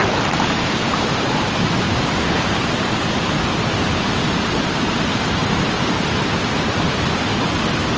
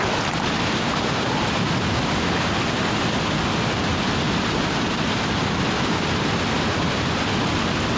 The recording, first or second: second